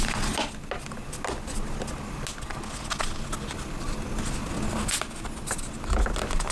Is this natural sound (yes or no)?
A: yes